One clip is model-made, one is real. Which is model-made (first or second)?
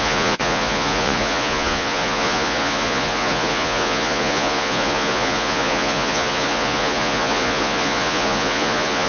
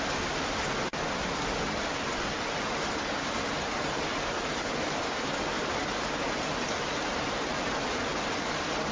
first